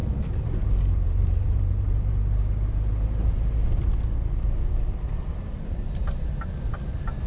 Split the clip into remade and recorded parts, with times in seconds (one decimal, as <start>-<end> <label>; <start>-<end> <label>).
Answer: 0.0-2.1 remade; 2.1-7.3 recorded